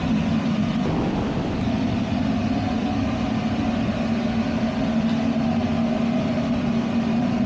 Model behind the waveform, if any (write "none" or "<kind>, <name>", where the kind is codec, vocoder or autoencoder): none